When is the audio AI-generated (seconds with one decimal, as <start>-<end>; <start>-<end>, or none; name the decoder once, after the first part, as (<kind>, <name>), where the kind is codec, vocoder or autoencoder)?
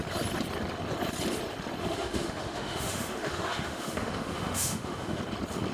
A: 1.8-5.2 (autoencoder, DAC-VAE)